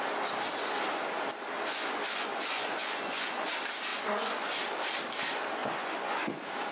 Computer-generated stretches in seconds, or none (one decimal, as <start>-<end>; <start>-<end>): 1.7-3.5; 3.9-4.6; 5.6-6.3